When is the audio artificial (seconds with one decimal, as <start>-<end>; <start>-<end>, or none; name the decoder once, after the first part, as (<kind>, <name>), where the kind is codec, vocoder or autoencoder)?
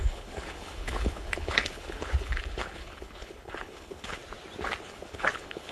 0.0-4.2 (codec, HILCodec); 4.8-5.7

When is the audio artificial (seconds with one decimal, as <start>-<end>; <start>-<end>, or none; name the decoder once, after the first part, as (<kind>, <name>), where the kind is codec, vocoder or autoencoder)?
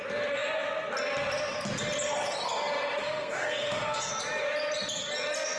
3.0-4.1 (codec, SNAC)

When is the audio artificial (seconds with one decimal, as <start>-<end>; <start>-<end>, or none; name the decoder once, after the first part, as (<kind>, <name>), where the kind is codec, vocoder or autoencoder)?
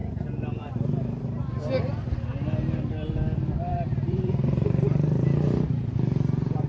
3.5-6.7 (vocoder, BigVGAN v2)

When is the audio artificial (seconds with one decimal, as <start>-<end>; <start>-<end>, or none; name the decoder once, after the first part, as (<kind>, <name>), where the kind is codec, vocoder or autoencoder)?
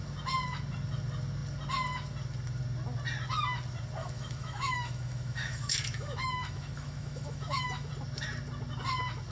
4.0-7.9 (autoencoder, DAC-VAE)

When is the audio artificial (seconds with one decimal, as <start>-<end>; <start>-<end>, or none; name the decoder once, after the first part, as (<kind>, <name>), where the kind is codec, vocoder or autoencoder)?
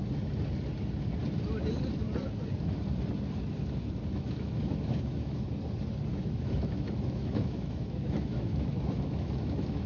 4.1-5.4 (autoencoder, DAC-VAE); 6.1-9.9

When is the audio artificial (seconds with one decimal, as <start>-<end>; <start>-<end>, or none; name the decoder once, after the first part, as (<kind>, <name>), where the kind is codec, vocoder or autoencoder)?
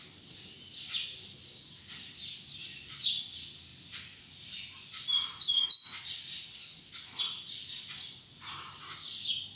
none